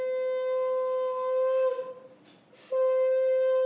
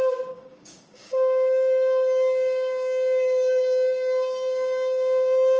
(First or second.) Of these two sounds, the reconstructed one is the second